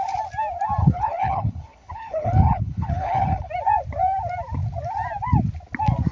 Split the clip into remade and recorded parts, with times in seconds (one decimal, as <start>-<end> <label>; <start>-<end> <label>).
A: 0.0-0.8 recorded; 0.8-3.5 remade; 3.5-6.1 recorded